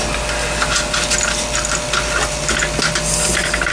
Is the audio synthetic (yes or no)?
no